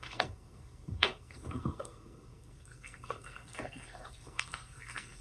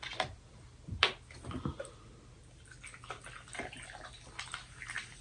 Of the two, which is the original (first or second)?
second